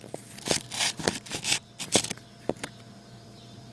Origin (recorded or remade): remade